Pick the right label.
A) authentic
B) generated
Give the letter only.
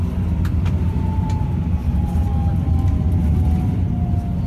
A